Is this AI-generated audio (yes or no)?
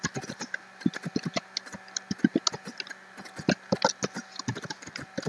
no